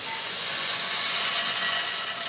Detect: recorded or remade remade